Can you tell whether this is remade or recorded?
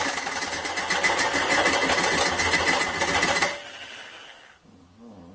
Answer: recorded